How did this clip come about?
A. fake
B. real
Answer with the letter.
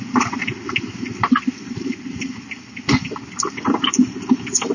B